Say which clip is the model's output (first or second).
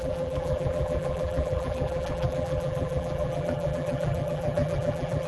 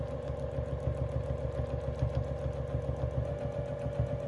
first